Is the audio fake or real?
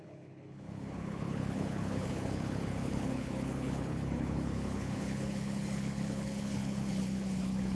fake